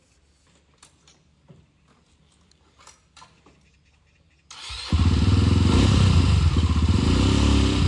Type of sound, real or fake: real